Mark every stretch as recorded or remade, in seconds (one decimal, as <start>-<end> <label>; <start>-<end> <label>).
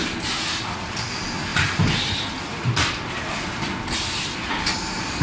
0.0-5.2 recorded